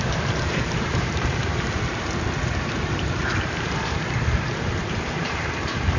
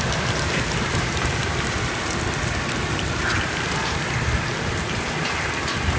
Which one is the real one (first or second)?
second